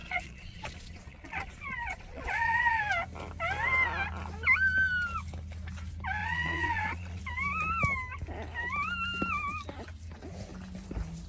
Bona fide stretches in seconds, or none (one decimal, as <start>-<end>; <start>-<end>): 2.8-6.2; 7.2-11.3